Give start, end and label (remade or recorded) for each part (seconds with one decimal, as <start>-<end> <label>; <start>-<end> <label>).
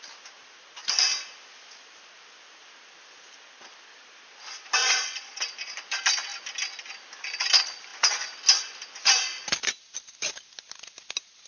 0.0-4.8 recorded; 4.8-5.4 remade; 5.4-11.5 recorded